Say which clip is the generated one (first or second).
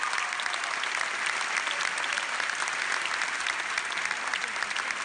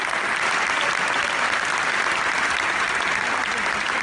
second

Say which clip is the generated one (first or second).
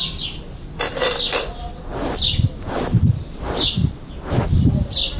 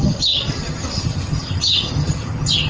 second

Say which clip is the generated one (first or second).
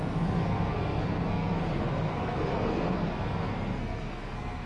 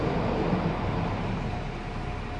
first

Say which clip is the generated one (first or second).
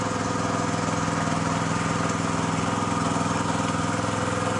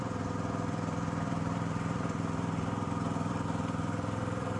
second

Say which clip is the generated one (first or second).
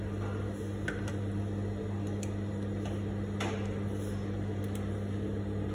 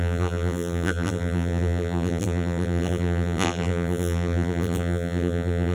second